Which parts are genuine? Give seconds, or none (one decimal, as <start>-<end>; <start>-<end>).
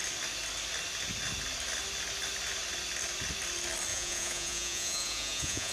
0.0-3.9